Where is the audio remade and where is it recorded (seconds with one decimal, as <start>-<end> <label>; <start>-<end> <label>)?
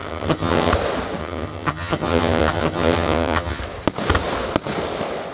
0.0-0.7 remade; 0.7-1.2 recorded; 1.2-3.6 remade; 3.6-5.3 recorded